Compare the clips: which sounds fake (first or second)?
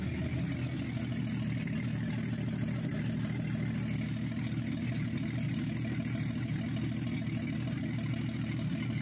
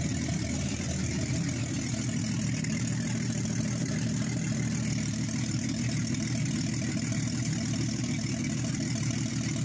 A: second